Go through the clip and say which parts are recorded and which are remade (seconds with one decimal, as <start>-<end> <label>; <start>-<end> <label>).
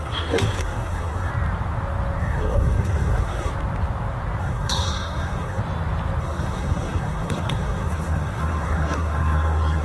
0.0-1.3 remade; 1.3-2.2 recorded; 2.2-3.5 remade; 3.5-4.4 recorded; 4.4-5.6 remade; 5.6-6.2 recorded; 6.2-9.8 remade